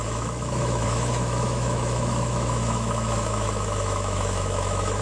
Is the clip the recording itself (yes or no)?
no